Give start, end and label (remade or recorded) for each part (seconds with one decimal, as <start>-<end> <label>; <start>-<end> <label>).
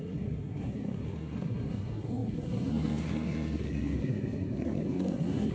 0.0-5.5 remade